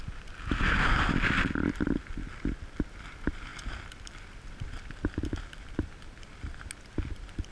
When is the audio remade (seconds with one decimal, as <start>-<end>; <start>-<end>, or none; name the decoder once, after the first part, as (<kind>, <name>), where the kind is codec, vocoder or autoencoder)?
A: none